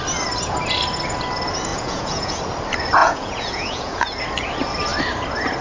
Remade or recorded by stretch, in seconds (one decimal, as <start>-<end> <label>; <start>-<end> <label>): 0.0-1.7 recorded; 1.7-2.4 remade; 2.4-3.0 recorded; 3.0-4.2 remade; 4.2-5.6 recorded